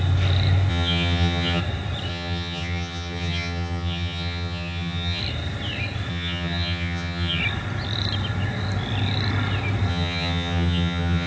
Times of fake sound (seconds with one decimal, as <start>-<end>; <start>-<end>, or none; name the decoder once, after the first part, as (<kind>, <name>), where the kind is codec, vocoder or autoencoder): 0.7-1.6 (vocoder, HiFi-GAN); 2.1-5.2; 6.1-7.4; 9.9-11.3